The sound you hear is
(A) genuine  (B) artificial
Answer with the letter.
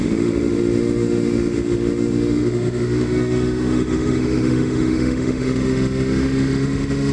B